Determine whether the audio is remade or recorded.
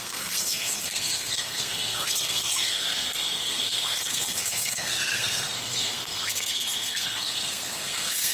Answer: remade